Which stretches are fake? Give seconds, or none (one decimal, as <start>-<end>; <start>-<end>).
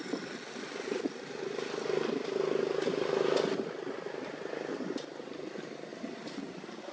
none